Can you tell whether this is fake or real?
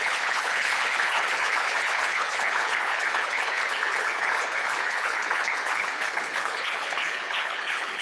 fake